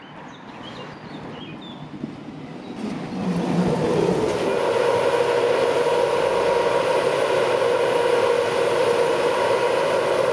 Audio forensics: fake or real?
real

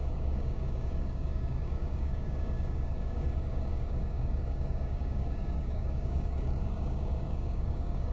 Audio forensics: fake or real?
fake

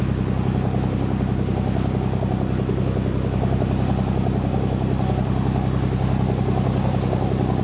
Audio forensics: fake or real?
real